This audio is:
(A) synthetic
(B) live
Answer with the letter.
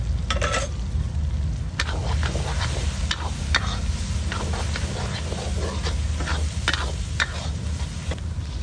B